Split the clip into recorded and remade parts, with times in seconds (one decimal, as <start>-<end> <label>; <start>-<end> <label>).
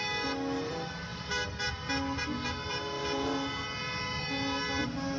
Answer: 0.0-5.2 recorded